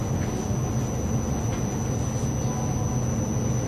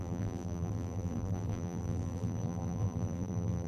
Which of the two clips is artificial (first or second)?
second